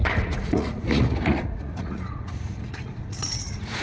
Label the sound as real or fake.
fake